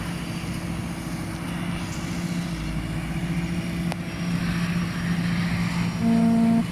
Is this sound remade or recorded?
recorded